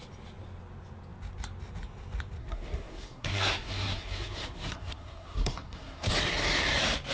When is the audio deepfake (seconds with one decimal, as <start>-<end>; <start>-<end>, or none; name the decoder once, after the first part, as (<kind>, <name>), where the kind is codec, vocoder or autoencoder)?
2.4-6.1 (codec, SNAC)